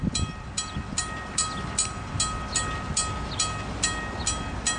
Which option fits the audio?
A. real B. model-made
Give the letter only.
A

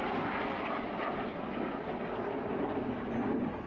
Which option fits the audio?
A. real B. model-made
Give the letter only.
A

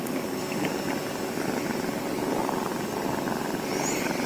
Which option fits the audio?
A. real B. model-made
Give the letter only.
A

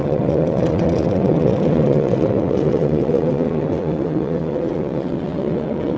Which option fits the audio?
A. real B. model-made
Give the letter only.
B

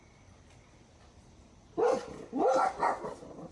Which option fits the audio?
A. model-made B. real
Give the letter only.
B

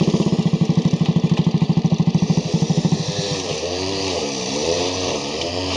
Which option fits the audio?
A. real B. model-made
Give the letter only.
B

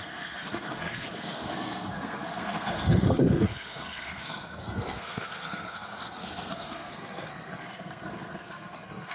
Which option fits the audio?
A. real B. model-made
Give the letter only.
B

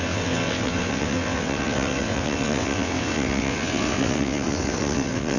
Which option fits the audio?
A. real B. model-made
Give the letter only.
B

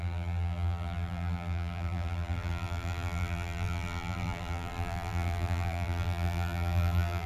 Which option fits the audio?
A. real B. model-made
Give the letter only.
B